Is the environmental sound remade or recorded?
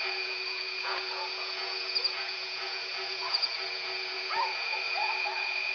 remade